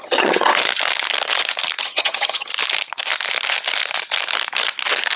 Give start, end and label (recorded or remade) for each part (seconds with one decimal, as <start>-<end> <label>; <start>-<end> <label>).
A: 0.0-0.5 remade; 0.5-1.8 recorded; 1.8-2.5 remade; 2.5-5.2 recorded